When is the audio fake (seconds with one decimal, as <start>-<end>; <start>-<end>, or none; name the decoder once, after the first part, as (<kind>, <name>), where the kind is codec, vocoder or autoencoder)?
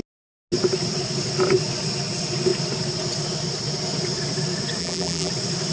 4.8-5.3 (vocoder, BigVGAN v2)